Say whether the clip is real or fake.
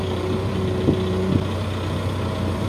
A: real